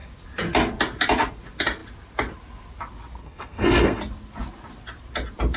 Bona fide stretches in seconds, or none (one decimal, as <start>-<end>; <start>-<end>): 0.0-3.2; 4.0-5.6

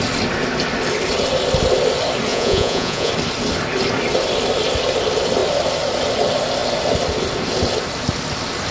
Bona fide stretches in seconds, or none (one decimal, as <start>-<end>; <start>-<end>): 0.0-2.3; 3.1-8.7

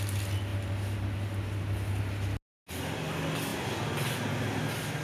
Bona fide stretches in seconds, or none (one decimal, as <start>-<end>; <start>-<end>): 0.0-5.0

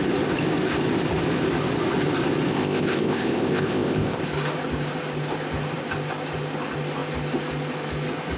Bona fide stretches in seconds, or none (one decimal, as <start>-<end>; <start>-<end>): 0.0-2.5; 4.2-8.4

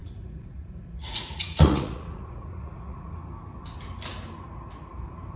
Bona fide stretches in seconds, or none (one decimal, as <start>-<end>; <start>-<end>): 3.2-5.4

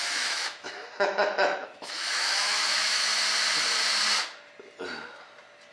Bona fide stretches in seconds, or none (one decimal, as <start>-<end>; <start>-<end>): 3.1-5.7

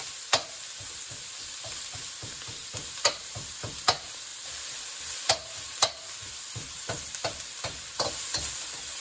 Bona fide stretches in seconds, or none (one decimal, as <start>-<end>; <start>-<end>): 0.0-9.0